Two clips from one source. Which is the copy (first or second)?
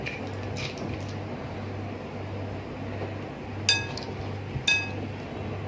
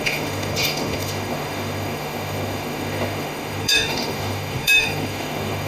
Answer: second